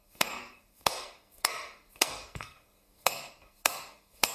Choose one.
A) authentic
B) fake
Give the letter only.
B